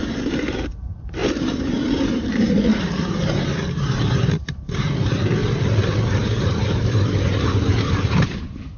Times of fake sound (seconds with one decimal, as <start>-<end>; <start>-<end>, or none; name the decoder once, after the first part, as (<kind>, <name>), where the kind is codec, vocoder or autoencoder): 0.0-5.4 (vocoder, BigVGAN v2); 6.2-8.8